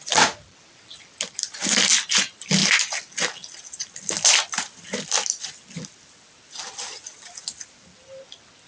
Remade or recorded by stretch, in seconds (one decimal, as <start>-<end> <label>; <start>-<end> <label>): 0.0-8.7 recorded